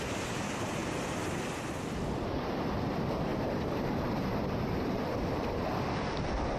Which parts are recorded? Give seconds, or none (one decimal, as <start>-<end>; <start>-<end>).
0.0-3.3; 5.0-6.6